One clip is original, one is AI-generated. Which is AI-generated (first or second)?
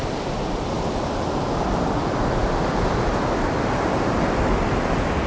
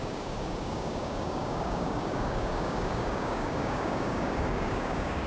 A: second